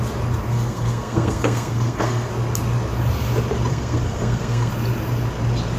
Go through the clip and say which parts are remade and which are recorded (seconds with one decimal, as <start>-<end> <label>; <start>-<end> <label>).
0.0-0.5 recorded; 0.5-2.3 remade; 2.3-3.7 recorded; 3.7-4.7 remade; 4.7-5.8 recorded